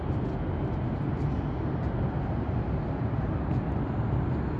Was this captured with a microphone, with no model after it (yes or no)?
yes